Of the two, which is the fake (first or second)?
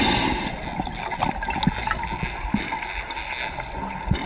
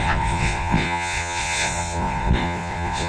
second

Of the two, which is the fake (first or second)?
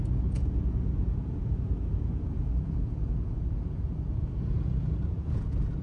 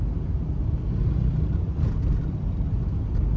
first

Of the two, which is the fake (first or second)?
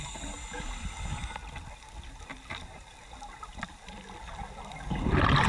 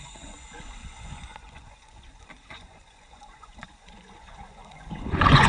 second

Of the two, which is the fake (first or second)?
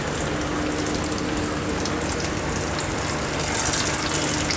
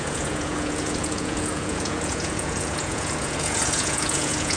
second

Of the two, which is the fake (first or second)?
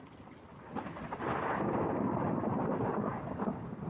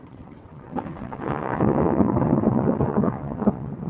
second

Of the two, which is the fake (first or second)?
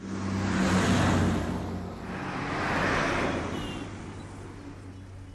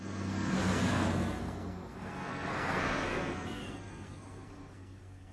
second